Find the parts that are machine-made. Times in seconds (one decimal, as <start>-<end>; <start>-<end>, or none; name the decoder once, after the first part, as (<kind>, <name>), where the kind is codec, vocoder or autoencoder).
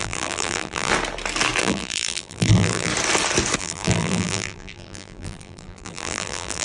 0.0-0.9 (vocoder, BigVGAN v2); 1.6-2.9; 3.6-6.6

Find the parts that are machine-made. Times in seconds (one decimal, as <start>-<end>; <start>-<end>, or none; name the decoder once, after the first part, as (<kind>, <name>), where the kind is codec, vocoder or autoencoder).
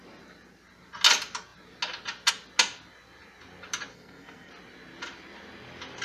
3.9-4.5 (codec, SNAC)